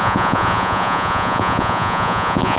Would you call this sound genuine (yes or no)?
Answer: no